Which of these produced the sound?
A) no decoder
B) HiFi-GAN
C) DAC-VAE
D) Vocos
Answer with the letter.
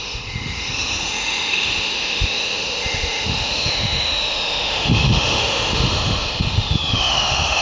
C